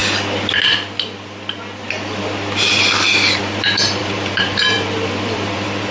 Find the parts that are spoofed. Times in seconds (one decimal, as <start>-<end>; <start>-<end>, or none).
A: 3.4-5.9